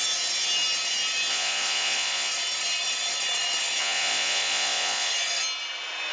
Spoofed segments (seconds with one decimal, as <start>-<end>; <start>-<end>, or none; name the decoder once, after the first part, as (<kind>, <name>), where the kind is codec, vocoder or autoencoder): 1.3-2.3 (vocoder, Vocos); 3.8-5.1